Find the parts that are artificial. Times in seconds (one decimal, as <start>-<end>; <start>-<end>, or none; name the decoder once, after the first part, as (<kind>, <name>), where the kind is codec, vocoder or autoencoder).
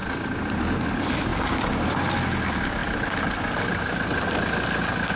none